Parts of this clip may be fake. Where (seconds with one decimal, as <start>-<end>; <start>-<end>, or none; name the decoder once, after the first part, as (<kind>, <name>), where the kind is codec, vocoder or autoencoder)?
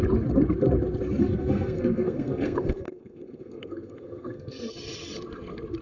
1.2-4.7 (codec, SNAC)